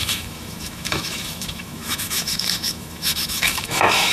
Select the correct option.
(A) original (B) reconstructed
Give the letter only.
B